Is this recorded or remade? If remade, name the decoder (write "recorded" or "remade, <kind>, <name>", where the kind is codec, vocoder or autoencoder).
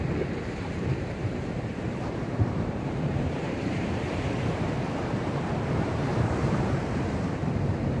remade, vocoder, BigVGAN v2